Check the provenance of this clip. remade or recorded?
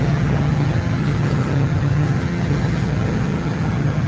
remade